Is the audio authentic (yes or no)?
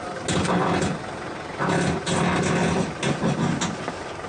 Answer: yes